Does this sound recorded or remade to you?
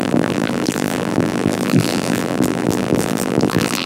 remade